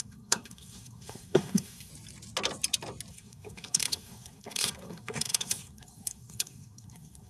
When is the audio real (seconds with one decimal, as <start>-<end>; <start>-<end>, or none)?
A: 1.9-3.1